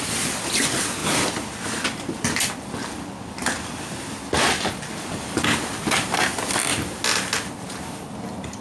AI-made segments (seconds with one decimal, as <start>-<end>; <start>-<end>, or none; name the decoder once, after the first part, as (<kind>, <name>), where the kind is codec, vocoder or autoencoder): none